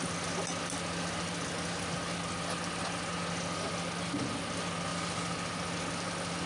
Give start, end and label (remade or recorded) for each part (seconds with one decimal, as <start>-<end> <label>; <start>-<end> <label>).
0.0-6.5 recorded